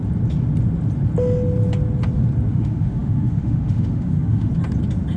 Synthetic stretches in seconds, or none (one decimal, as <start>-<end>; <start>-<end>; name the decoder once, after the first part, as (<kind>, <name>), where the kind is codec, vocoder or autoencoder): 2.5-4.5 (autoencoder, DAC-VAE)